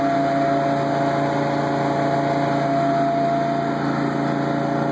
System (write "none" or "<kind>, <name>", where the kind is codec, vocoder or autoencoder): none